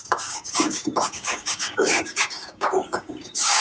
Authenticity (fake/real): fake